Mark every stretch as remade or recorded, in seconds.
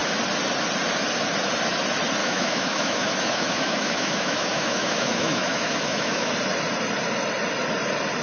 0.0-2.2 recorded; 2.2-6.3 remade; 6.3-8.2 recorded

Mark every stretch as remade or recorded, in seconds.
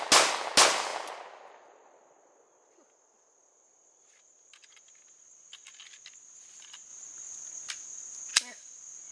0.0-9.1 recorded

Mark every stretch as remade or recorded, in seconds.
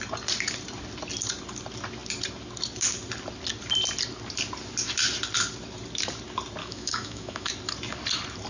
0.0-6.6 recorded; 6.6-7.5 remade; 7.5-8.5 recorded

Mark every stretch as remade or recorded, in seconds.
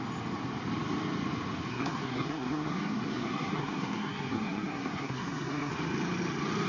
0.0-1.7 recorded; 1.7-5.7 remade; 5.7-6.7 recorded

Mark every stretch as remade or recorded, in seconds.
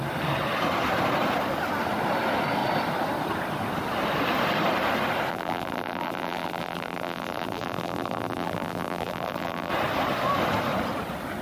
0.0-5.3 recorded; 5.3-9.7 remade; 9.7-11.4 recorded